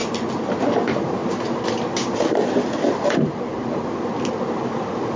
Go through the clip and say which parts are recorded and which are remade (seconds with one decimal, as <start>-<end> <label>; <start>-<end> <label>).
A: 0.0-5.2 recorded